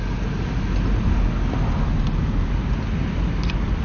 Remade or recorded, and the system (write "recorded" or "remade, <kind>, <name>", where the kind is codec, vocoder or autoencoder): recorded